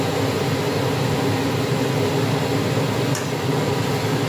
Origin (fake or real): real